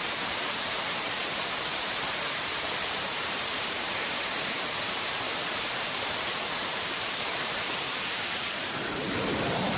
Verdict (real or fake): fake